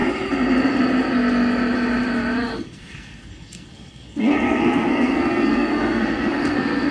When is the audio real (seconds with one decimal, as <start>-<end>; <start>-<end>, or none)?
0.0-2.5